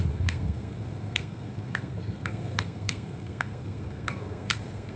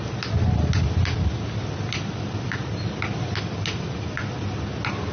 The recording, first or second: second